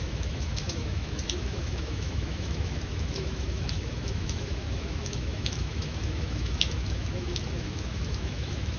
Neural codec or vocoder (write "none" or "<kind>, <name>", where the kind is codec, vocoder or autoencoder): autoencoder, DAC-VAE